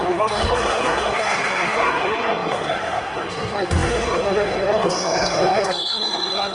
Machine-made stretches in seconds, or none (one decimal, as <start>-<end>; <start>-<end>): 0.0-6.5